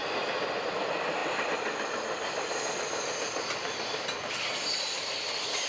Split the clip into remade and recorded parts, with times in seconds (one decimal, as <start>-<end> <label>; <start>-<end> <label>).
0.0-0.6 recorded; 0.6-1.2 remade; 1.2-4.3 recorded; 4.3-5.7 remade